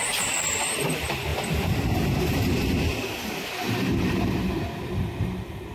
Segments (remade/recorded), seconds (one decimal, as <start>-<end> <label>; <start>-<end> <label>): 0.0-1.3 recorded; 1.3-3.3 remade; 3.3-5.7 recorded

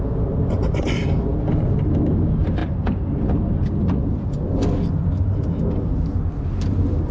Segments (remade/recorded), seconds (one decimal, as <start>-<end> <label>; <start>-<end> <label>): 0.0-7.1 recorded

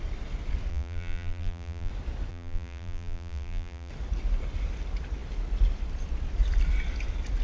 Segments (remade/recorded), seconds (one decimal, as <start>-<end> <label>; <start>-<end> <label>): 0.0-0.7 recorded; 0.7-1.9 remade; 1.9-2.3 recorded; 2.3-3.9 remade; 3.9-7.4 recorded